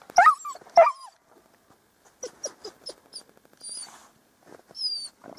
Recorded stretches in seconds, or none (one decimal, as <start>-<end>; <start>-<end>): 0.0-5.4